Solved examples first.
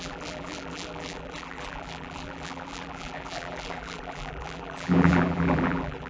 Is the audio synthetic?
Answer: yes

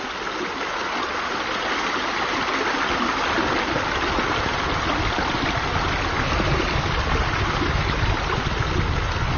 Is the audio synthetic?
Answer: no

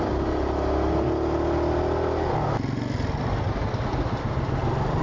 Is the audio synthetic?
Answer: no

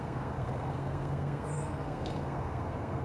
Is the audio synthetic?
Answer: yes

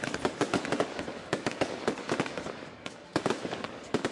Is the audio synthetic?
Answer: yes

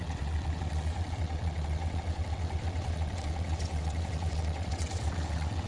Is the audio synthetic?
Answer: yes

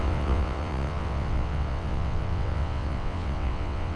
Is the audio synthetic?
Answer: yes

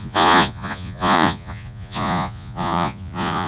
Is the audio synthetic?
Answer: yes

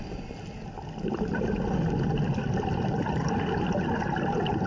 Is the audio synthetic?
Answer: no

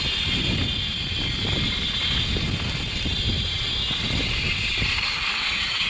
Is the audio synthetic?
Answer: no